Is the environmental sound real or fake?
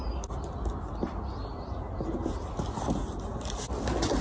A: real